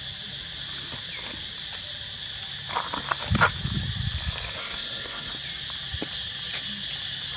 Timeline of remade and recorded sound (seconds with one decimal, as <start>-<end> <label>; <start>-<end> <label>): 0.0-4.6 recorded; 4.6-5.3 remade; 5.3-7.4 recorded

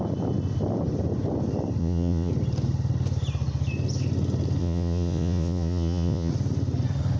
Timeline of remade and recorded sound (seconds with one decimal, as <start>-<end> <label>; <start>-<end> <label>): 0.0-1.8 recorded; 1.8-2.3 remade; 2.3-4.6 recorded; 4.6-6.3 remade; 6.3-7.2 recorded

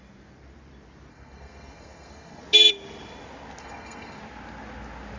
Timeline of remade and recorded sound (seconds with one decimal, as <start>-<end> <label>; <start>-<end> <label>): 0.0-1.1 recorded; 1.1-2.4 remade; 2.4-3.6 recorded; 3.6-4.2 remade; 4.2-5.2 recorded

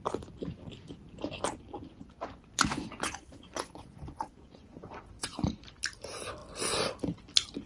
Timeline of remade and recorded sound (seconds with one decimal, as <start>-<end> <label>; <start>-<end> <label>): 0.0-1.8 recorded; 1.8-5.7 remade; 5.7-7.7 recorded

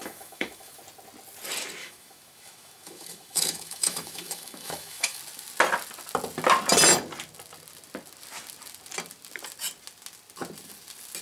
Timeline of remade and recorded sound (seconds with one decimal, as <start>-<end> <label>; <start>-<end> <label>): 0.0-0.8 remade; 0.8-1.8 recorded; 1.8-5.2 remade; 5.2-11.2 recorded

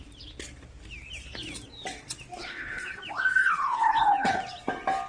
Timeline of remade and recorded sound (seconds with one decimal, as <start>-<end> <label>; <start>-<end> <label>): 0.0-2.4 recorded; 2.4-3.0 remade; 3.0-3.4 recorded; 3.4-4.4 remade; 4.4-5.1 recorded

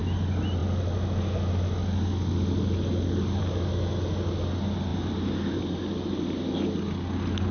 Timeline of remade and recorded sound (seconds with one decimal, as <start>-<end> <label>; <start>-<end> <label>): 0.0-7.5 recorded

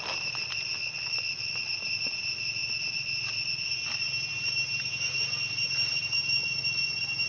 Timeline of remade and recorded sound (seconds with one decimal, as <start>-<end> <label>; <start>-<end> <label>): 0.0-0.8 recorded; 0.8-1.7 remade; 1.7-7.3 recorded